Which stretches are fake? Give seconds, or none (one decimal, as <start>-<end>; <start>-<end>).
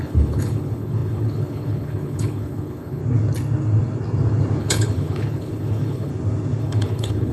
0.0-3.0; 4.6-6.1; 6.6-7.3